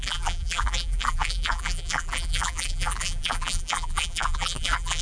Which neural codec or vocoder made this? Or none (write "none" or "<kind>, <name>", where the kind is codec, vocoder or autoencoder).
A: vocoder, BigVGAN v2